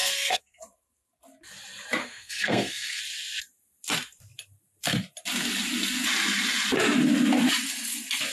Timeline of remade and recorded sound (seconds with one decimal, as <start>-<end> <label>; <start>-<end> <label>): 0.0-0.6 remade; 0.6-2.0 recorded; 2.0-3.0 remade; 3.0-8.3 recorded